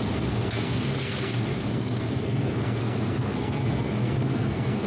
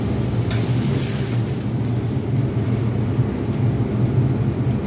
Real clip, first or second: second